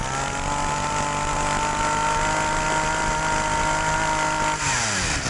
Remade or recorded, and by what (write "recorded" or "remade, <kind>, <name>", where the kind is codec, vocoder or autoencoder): recorded